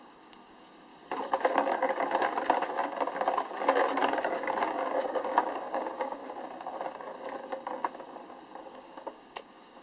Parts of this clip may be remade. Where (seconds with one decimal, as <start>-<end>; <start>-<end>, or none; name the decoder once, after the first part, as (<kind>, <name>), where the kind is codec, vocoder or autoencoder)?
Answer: 0.0-0.9 (codec, DAC); 3.9-6.2; 8.6-9.8